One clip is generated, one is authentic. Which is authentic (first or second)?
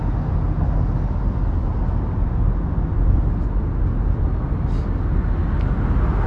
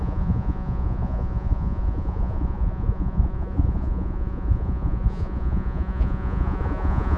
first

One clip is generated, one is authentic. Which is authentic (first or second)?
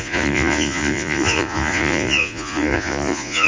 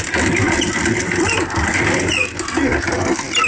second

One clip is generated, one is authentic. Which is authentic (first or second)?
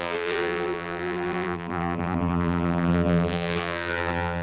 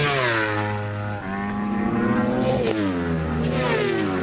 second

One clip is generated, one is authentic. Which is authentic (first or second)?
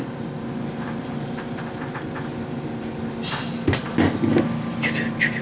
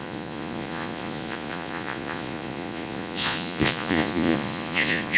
first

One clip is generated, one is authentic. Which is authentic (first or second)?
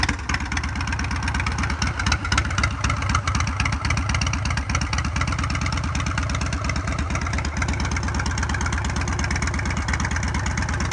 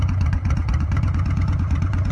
first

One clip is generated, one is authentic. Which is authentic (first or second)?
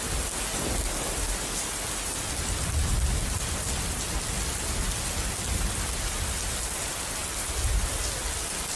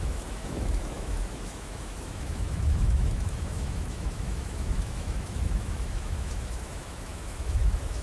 first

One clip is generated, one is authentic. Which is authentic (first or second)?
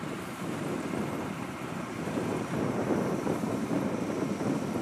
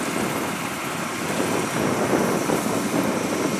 second